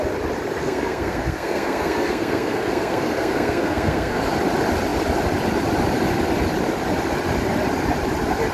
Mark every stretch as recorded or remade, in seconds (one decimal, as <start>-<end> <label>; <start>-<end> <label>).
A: 0.0-0.6 recorded; 0.6-4.2 remade; 4.2-8.5 recorded